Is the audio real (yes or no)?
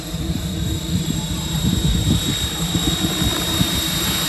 no